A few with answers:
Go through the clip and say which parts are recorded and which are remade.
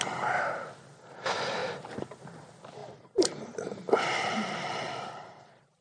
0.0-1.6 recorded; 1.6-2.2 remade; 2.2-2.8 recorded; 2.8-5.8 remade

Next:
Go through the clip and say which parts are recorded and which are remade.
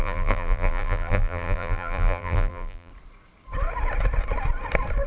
0.0-2.9 remade; 2.9-5.1 recorded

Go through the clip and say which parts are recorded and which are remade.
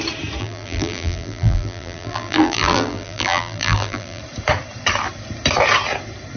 0.0-0.4 recorded; 0.4-4.2 remade; 4.2-6.4 recorded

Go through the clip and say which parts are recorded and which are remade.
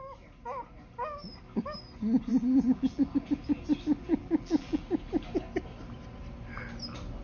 0.0-2.3 recorded; 2.3-3.1 remade; 3.1-4.0 recorded; 4.0-4.8 remade; 4.8-7.2 recorded